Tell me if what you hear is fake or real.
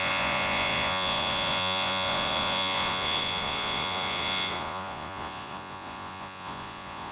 fake